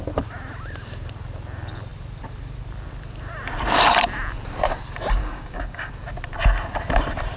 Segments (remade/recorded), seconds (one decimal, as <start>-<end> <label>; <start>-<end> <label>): 0.0-5.2 recorded; 5.2-5.9 remade; 5.9-7.4 recorded

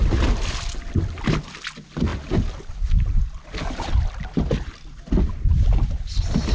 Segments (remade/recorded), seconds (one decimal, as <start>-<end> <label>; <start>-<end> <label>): 0.0-6.5 recorded

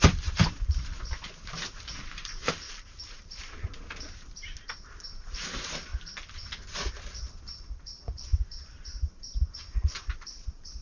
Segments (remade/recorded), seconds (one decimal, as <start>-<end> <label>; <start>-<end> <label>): 0.0-5.9 remade; 5.9-7.4 recorded; 7.4-10.8 remade

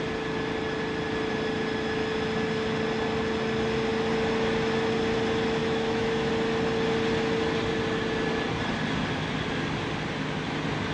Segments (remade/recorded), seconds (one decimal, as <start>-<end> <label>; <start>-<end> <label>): 0.0-5.6 recorded; 5.6-6.3 remade; 6.3-10.9 recorded

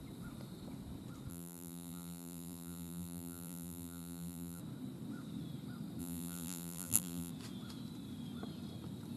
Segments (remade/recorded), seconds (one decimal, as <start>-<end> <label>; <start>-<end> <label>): 0.0-1.3 recorded; 1.3-4.6 remade; 4.6-6.0 recorded; 6.0-7.3 remade; 7.3-9.2 recorded

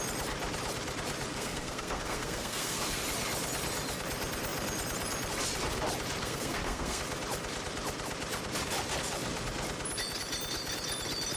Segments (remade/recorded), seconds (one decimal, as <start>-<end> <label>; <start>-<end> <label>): 0.0-1.3 recorded; 1.3-3.0 remade; 3.0-6.2 recorded; 6.2-7.0 remade; 7.0-11.4 recorded